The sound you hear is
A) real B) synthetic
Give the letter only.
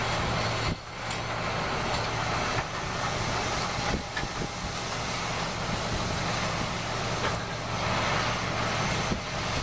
A